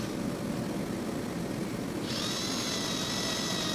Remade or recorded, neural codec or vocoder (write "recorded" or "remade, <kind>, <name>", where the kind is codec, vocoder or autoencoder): recorded